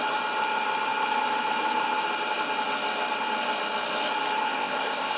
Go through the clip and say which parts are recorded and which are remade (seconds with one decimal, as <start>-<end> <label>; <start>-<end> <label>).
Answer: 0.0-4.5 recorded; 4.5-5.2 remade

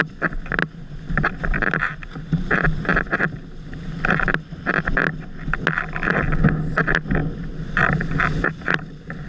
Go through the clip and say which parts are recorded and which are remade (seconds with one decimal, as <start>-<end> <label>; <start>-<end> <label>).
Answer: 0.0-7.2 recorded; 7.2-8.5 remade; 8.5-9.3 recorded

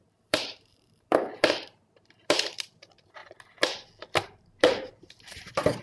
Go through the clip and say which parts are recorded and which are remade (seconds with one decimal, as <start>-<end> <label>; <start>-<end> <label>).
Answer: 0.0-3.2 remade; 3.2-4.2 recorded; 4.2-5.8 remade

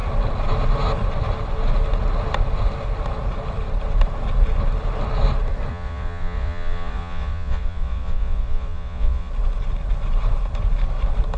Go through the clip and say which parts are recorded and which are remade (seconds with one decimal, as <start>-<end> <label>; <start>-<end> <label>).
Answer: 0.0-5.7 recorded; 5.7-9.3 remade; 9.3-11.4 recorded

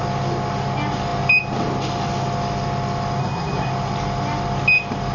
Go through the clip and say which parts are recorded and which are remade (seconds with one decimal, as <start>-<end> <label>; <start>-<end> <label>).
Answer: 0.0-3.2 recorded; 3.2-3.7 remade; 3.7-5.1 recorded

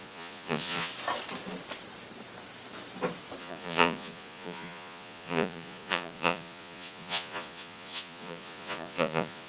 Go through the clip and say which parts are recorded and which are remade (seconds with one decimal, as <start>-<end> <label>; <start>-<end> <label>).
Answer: 0.0-0.9 remade; 0.9-3.4 recorded; 3.4-9.5 remade